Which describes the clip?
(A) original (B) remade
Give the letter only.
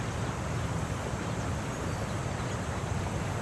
A